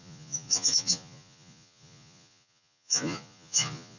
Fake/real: fake